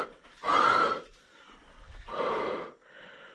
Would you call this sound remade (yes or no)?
yes